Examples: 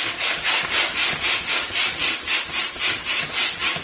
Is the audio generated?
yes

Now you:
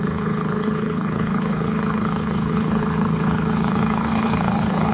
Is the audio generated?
yes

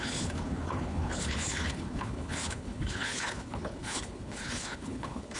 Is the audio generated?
yes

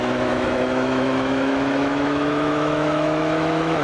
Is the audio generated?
yes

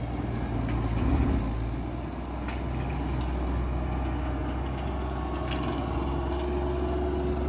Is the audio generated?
no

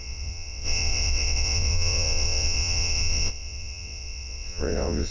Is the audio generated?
yes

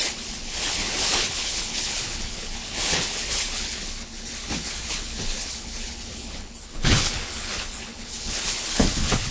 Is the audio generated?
yes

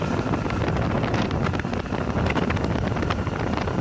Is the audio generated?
no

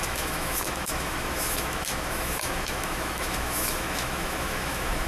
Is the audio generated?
yes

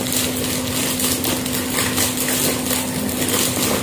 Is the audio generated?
no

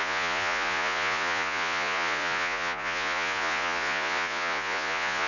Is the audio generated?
yes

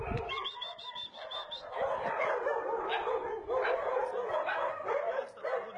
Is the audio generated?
yes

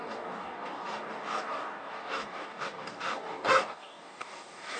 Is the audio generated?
yes